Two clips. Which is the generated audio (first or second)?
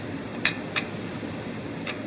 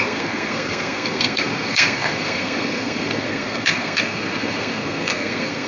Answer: second